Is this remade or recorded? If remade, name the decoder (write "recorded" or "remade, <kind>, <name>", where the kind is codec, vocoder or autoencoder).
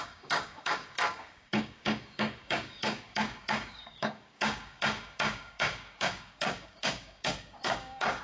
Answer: remade, codec, DAC